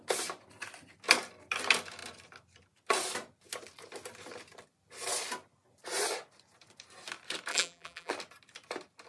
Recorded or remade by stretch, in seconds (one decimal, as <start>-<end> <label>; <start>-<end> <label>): 0.0-7.5 recorded; 7.5-8.1 remade; 8.1-9.1 recorded